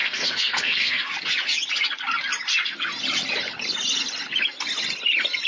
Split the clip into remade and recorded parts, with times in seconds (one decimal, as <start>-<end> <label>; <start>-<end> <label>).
0.0-1.1 remade; 1.1-5.5 recorded